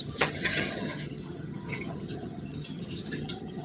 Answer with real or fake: fake